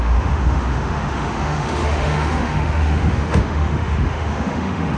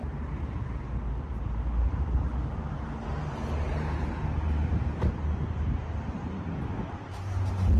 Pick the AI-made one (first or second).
first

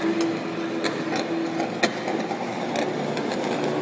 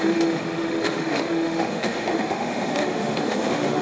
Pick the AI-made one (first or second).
second